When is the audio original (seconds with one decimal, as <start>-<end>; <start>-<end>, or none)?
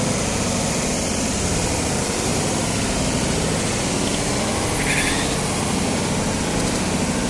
0.0-7.3